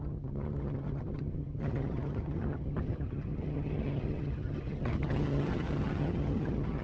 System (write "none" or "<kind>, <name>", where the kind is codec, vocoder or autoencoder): vocoder, HiFi-GAN